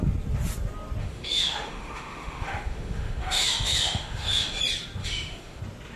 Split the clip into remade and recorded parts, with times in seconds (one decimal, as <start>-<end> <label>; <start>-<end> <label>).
0.0-1.0 recorded; 1.0-4.6 remade; 4.6-5.0 recorded; 5.0-5.6 remade; 5.6-6.0 recorded